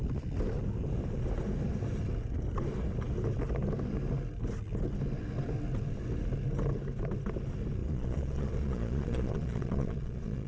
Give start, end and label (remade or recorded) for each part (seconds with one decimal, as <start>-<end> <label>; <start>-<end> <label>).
0.0-7.8 recorded; 7.8-10.5 remade